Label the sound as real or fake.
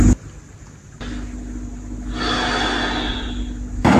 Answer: real